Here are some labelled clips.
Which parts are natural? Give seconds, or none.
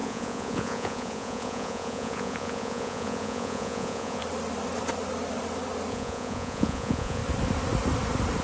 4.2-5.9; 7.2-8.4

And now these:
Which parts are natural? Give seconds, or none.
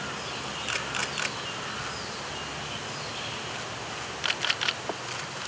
0.0-5.5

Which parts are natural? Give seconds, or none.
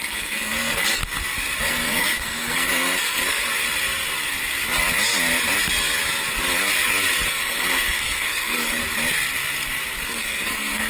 1.0-1.6; 3.5-7.3; 8.8-10.0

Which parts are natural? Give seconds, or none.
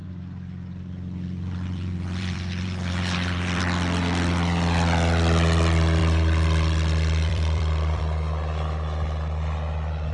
3.6-6.0; 8.0-10.1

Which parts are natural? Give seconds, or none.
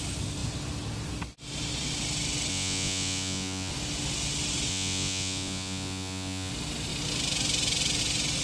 0.0-2.5; 3.7-4.7; 6.5-8.4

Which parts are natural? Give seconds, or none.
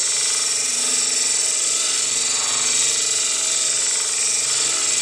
0.0-5.0